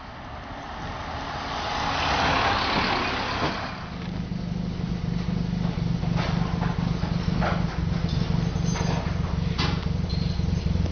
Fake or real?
real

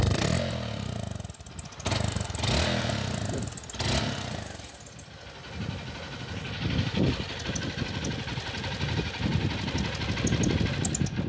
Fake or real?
real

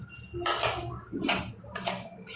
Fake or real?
real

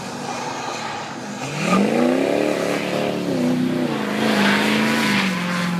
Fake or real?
real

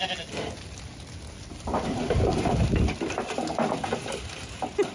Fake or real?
real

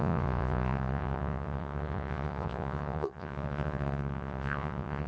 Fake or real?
fake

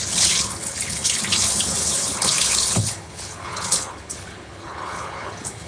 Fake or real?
fake